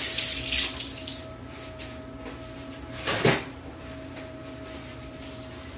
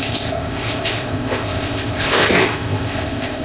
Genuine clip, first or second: first